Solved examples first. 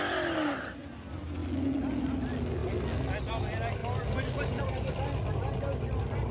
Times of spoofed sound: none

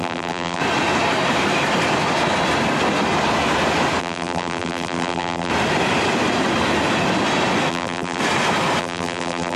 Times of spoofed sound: 0.0-0.6; 4.0-5.5; 7.7-8.2; 8.8-9.6

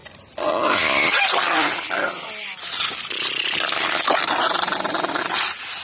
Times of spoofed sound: none

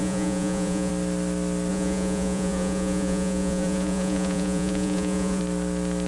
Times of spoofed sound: 0.0-0.9; 1.7-5.4

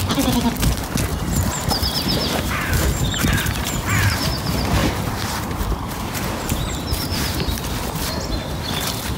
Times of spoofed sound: 1.1-4.3; 4.8-7.6